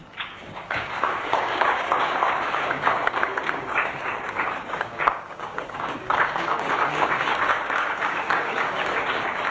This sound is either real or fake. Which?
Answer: fake